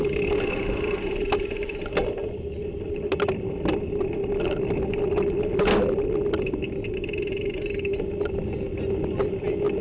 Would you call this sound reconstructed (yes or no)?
no